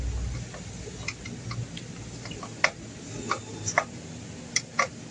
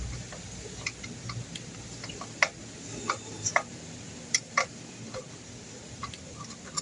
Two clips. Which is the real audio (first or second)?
first